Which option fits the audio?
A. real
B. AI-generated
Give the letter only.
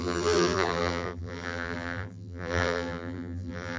B